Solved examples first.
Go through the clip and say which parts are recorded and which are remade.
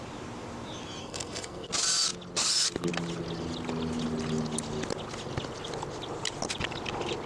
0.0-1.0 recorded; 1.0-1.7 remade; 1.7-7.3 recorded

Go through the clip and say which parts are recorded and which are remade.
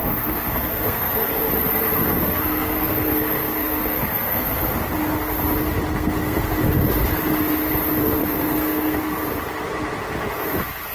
0.0-1.5 remade; 1.5-2.0 recorded; 2.0-4.7 remade; 4.7-5.9 recorded; 5.9-6.5 remade; 6.5-8.0 recorded; 8.0-9.2 remade; 9.2-10.9 recorded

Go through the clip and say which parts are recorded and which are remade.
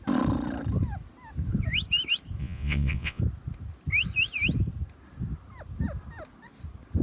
0.0-2.4 recorded; 2.4-3.2 remade; 3.2-7.0 recorded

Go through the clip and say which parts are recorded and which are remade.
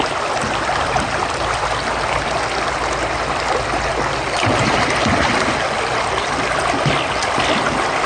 0.0-8.1 recorded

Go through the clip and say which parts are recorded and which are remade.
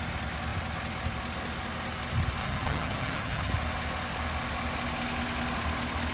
0.0-2.4 recorded; 2.4-3.5 remade; 3.5-6.1 recorded